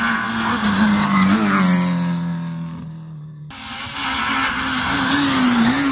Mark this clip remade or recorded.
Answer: recorded